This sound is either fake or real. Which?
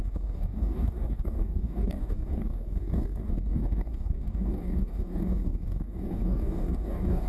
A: fake